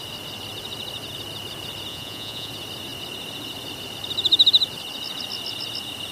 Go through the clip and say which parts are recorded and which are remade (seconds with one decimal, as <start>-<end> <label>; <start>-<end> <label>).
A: 0.0-1.9 recorded; 1.9-2.5 remade; 2.5-6.1 recorded